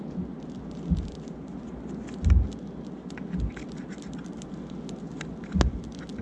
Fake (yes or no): no